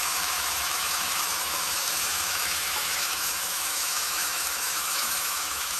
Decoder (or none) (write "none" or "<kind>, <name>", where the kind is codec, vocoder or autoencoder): autoencoder, DAC-VAE